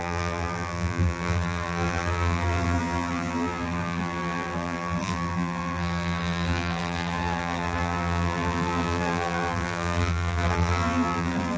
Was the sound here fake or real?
fake